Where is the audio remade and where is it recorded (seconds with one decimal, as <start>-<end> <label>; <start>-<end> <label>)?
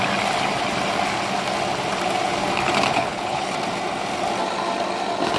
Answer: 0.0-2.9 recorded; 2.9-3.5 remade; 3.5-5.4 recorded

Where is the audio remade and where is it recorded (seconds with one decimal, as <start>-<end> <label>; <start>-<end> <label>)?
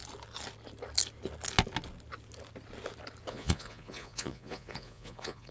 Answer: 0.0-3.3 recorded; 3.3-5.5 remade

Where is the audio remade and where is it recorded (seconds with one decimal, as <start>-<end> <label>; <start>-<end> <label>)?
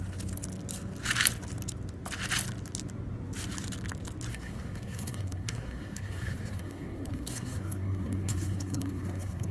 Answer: 0.0-4.3 recorded; 4.3-9.5 remade